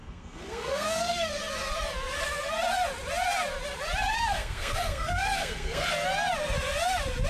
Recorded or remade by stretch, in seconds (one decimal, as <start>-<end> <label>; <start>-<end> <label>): 0.0-1.4 remade; 1.4-4.1 recorded; 4.1-5.9 remade; 5.9-7.3 recorded